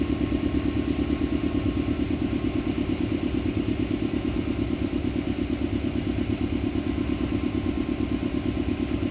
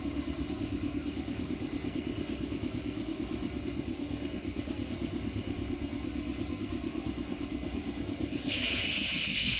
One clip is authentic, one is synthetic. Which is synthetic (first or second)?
second